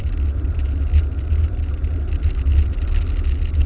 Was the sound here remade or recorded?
recorded